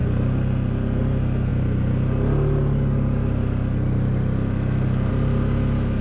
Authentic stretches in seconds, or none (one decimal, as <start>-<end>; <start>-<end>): 0.0-6.0